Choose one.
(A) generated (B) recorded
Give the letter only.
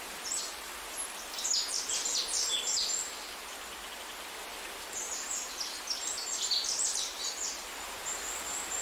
B